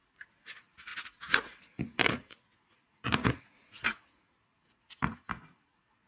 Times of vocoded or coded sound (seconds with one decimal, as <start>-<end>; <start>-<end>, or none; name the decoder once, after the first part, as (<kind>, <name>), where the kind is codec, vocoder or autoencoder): 0.0-6.1 (vocoder, Vocos)